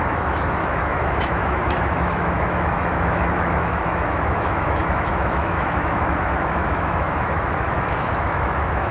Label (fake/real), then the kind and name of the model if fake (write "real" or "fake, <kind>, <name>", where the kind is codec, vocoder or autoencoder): fake, autoencoder, DAC-VAE